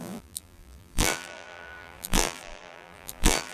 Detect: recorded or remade remade